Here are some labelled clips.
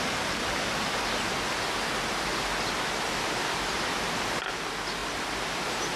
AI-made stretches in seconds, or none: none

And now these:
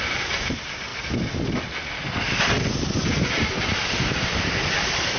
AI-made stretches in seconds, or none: 0.0-0.9 (vocoder, BigVGAN v2); 3.3-5.2